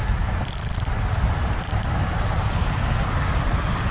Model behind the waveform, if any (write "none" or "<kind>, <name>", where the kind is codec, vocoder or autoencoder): none